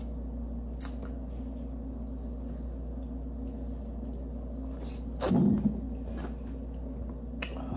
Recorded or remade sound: recorded